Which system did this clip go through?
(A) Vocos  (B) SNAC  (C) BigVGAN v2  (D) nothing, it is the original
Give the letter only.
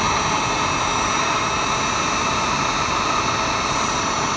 D